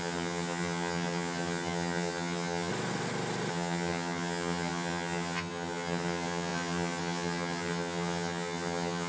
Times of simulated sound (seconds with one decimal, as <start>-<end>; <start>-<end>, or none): 0.0-2.7; 3.5-9.1